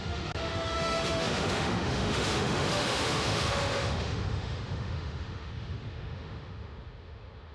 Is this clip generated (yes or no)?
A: yes